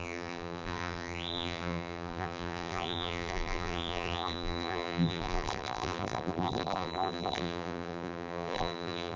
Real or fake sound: fake